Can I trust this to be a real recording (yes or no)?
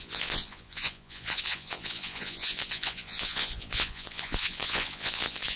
no